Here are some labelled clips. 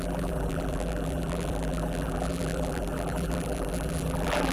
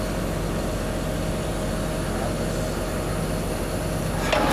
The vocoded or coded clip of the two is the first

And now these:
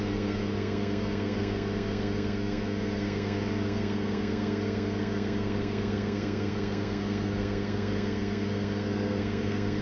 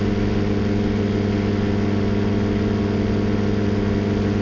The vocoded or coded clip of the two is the first